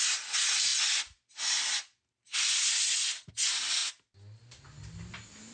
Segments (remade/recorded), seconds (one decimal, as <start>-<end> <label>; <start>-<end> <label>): 0.0-5.5 recorded